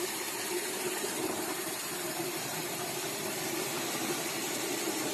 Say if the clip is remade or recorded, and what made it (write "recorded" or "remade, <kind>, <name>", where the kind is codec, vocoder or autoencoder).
remade, vocoder, BigVGAN v2